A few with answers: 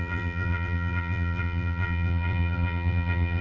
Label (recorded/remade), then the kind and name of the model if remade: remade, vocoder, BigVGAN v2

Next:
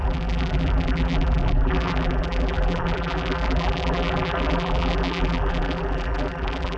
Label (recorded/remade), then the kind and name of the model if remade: remade, vocoder, BigVGAN v2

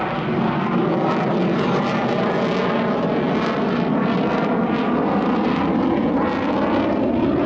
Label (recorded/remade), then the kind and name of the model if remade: recorded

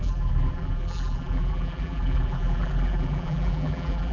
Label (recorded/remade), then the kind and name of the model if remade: remade, vocoder, BigVGAN v2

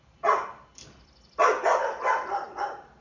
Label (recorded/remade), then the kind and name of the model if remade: remade, vocoder, BigVGAN v2